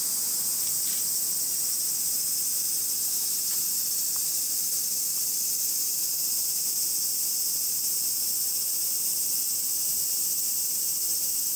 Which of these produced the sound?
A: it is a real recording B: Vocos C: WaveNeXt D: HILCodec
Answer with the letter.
A